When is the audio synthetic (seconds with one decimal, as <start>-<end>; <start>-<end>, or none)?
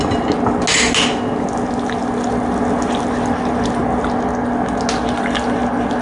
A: none